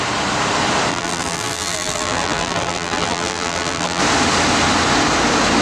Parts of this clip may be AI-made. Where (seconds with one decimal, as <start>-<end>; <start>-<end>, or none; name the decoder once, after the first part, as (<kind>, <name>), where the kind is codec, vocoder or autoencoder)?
0.9-4.0 (vocoder, BigVGAN v2)